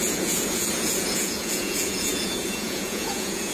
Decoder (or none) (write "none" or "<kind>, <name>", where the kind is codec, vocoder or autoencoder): vocoder, Vocos